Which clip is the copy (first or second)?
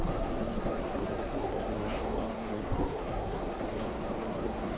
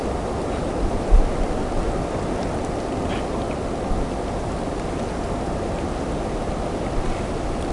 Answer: first